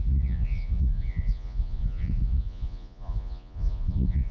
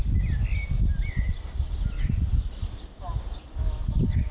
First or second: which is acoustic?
second